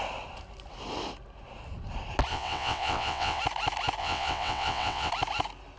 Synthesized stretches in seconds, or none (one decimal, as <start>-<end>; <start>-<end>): 2.3-3.4; 4.0-5.1